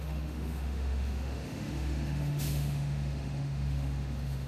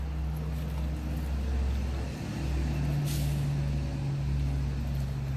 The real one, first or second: second